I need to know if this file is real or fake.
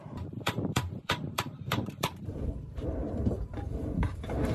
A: fake